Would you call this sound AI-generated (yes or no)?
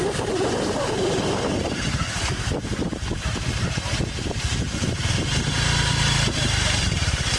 yes